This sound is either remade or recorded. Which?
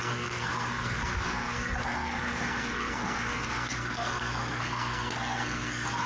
remade